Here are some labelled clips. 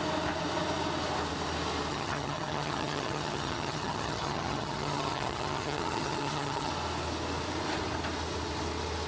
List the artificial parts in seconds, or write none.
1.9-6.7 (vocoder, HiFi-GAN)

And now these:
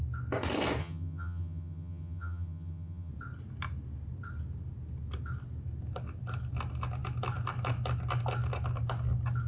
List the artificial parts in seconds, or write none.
0.8-3.1 (vocoder, HiFi-GAN)

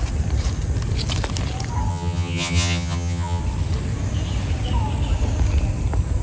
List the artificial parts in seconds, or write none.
1.9-3.4 (vocoder, HiFi-GAN)

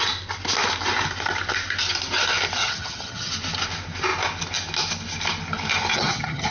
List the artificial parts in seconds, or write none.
2.6-3.3 (vocoder, HiFi-GAN); 5.9-6.5

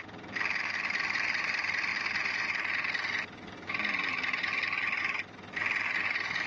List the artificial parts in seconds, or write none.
none

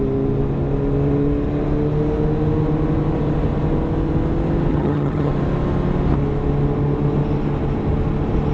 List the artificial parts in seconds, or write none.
4.7-5.3 (vocoder, HiFi-GAN)